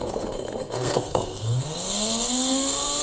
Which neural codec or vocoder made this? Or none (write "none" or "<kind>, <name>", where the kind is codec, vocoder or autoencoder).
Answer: codec, SNAC